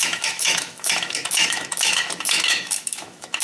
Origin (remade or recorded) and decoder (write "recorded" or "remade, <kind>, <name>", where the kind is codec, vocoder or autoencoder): remade, autoencoder, DAC-VAE